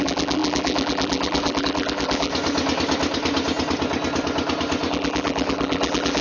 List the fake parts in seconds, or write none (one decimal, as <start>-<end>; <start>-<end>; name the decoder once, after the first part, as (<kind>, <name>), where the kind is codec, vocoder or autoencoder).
0.0-2.3 (vocoder, BigVGAN v2); 4.9-6.2